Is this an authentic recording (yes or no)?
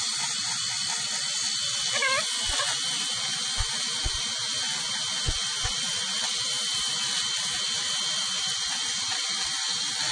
yes